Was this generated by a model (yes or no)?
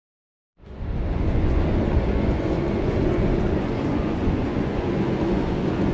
yes